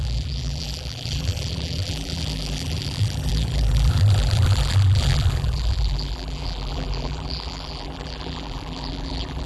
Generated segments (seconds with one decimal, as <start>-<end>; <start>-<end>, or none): 0.0-9.5